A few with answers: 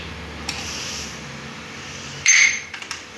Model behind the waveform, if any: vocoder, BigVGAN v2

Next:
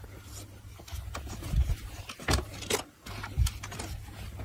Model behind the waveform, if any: none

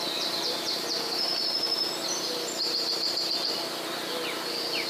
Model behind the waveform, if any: none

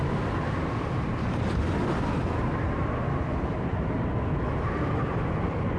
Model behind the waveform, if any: none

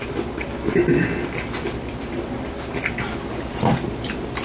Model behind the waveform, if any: none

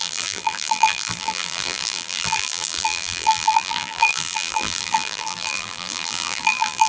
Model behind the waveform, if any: vocoder, BigVGAN v2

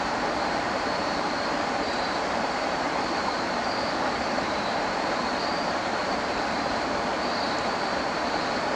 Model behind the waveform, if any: vocoder, BigVGAN v2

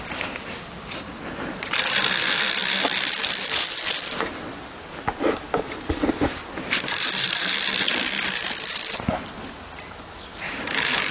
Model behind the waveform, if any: none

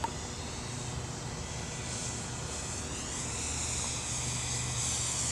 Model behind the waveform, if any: none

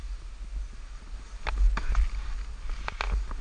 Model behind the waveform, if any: none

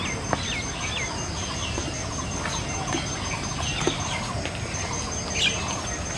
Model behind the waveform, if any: none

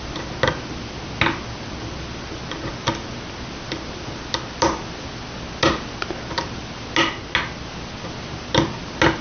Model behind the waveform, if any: none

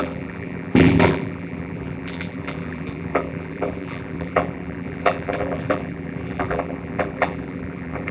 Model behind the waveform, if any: vocoder, BigVGAN v2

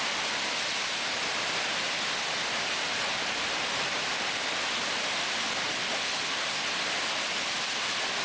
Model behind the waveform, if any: none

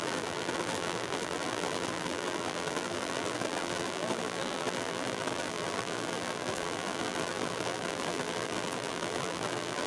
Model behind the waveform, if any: vocoder, BigVGAN v2